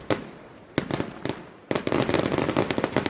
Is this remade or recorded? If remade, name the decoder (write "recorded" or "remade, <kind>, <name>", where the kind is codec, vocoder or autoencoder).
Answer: recorded